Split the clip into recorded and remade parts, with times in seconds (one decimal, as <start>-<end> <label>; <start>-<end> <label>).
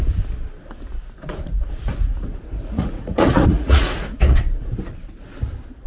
0.0-1.2 recorded; 1.2-4.7 remade; 4.7-5.9 recorded